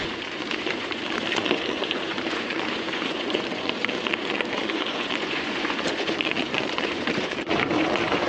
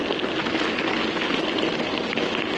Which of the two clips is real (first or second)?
second